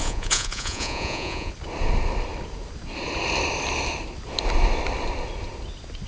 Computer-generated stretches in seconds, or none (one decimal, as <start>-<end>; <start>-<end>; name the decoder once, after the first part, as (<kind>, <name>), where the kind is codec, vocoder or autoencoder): 0.0-1.5 (vocoder, Vocos)